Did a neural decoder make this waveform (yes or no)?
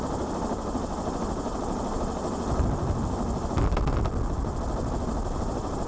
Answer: no